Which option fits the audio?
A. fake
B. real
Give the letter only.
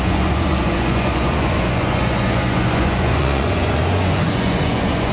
A